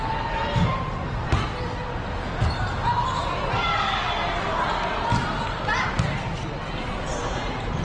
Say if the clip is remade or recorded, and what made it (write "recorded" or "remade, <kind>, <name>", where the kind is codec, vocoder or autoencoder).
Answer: recorded